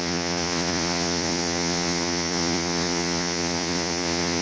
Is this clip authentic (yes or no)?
no